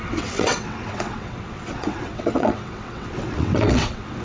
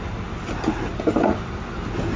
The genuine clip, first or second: second